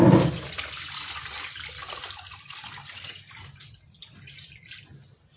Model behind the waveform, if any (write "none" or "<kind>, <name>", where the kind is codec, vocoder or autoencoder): none